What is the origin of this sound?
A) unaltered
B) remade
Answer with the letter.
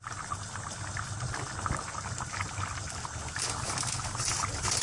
A